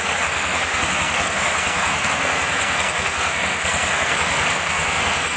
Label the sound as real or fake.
fake